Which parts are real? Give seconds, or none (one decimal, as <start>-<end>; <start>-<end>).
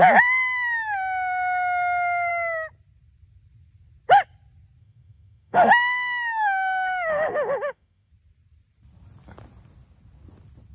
0.0-4.8; 8.1-10.7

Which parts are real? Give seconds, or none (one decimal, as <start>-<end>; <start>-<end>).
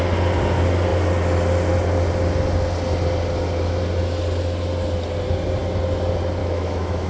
0.0-6.4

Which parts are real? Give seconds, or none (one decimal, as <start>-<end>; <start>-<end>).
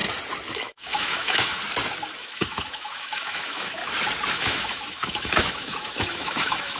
0.0-0.5; 1.6-2.2; 3.8-4.3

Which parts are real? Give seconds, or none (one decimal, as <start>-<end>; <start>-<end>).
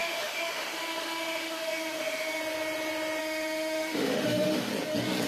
2.4-3.2; 4.7-5.3